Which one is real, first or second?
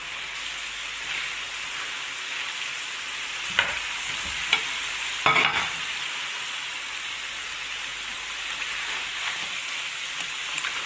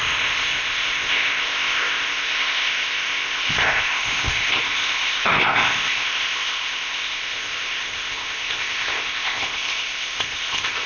first